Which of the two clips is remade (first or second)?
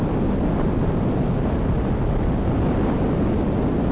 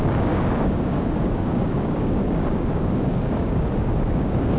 second